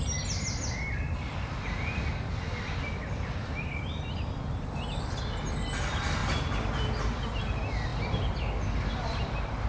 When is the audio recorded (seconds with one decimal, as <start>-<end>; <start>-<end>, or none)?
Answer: 0.0-9.7